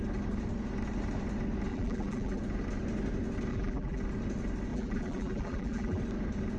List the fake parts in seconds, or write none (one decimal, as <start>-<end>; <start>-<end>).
1.7-2.4; 3.5-4.0; 4.7-6.0